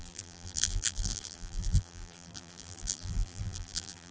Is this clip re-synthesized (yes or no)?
yes